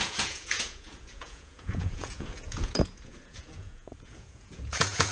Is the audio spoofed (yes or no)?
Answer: yes